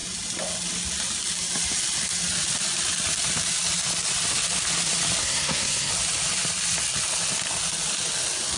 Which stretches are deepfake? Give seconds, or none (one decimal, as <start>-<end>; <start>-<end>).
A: 5.2-5.9